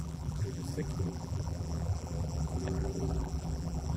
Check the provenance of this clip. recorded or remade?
remade